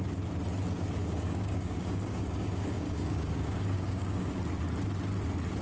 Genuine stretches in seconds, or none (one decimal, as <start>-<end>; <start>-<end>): 0.0-1.0; 4.4-5.6